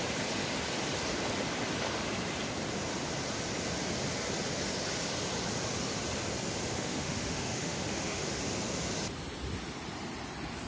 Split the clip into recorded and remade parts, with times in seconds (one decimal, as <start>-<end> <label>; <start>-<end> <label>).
0.0-6.7 recorded; 6.7-8.4 remade; 8.4-10.7 recorded